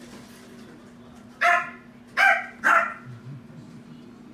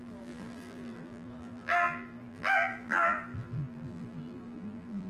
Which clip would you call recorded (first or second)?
first